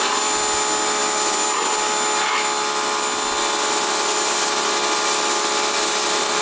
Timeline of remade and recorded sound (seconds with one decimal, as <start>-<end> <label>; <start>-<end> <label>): 0.0-6.4 recorded